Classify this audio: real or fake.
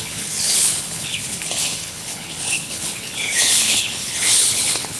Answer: fake